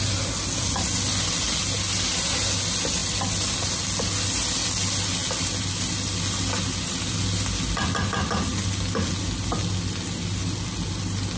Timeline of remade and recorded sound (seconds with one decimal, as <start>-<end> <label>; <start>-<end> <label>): 0.0-11.4 recorded